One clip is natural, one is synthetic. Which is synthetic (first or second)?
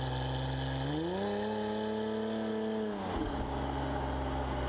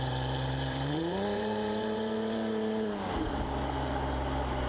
second